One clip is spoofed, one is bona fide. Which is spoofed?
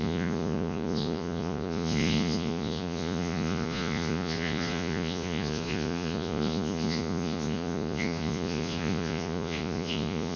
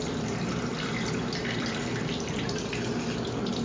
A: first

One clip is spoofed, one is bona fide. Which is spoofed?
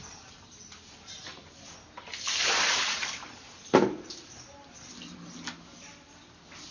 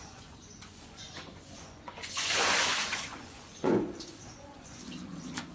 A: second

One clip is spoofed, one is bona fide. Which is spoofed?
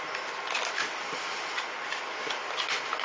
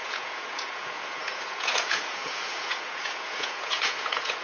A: second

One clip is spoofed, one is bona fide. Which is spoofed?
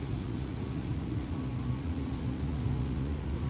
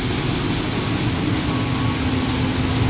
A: first